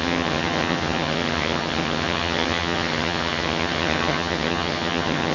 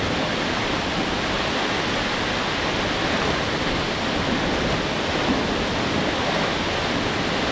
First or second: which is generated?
first